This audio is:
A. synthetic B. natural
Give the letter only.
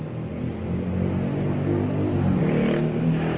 B